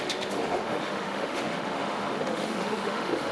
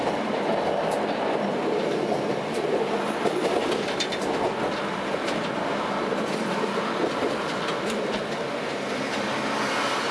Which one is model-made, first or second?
first